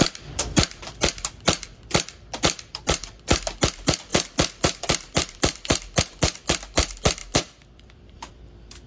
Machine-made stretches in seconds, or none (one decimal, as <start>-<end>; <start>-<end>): 0.0-8.9